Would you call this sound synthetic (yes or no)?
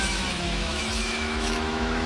yes